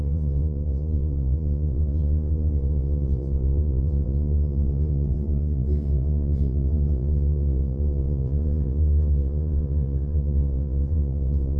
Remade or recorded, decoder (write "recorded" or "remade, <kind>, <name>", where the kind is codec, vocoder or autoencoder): remade, vocoder, Vocos